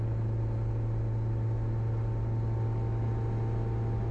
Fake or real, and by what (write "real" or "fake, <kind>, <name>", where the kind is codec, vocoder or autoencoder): real